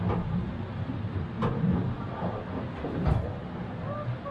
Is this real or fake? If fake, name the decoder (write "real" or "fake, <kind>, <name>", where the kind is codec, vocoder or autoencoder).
real